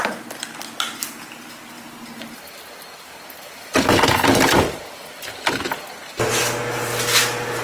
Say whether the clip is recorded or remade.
recorded